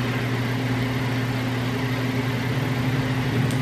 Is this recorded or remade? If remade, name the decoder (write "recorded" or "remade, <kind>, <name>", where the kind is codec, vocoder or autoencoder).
recorded